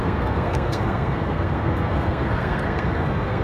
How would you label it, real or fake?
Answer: fake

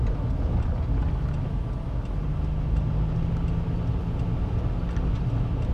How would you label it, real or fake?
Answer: real